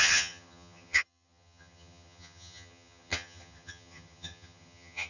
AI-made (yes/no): yes